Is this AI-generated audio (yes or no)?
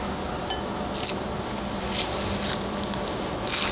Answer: no